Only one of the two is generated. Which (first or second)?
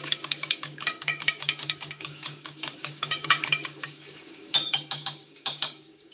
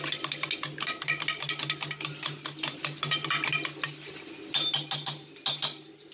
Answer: first